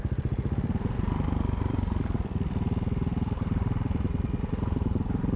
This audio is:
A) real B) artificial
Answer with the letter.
B